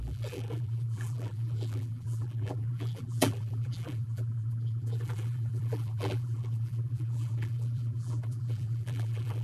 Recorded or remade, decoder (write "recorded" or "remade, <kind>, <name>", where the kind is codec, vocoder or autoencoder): remade, vocoder, BigVGAN v2